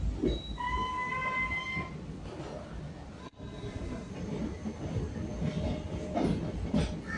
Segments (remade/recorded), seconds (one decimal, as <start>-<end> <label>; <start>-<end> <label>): 0.0-3.2 recorded; 3.2-4.1 remade; 4.1-7.2 recorded